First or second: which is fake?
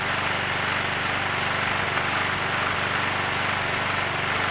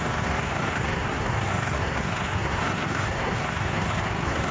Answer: second